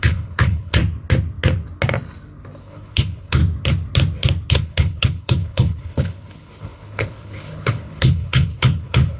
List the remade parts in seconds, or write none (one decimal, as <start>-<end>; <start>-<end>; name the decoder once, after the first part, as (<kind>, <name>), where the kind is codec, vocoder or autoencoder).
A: 0.0-0.8 (codec, HILCodec); 2.6-3.4; 4.5-9.2